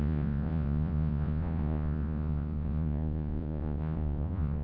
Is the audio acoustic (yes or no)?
no